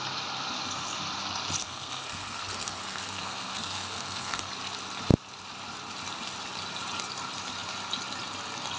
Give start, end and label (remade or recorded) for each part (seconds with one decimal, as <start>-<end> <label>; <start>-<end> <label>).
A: 0.0-1.6 recorded; 1.6-4.5 remade; 4.5-8.8 recorded